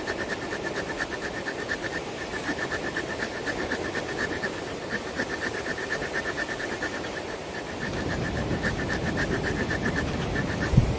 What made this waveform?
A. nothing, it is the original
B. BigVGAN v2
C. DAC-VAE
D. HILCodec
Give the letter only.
B